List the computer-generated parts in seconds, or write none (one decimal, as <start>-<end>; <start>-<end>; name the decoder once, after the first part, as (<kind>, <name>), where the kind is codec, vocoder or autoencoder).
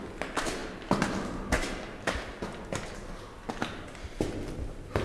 none